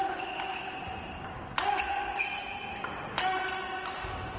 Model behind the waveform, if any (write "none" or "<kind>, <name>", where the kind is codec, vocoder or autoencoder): none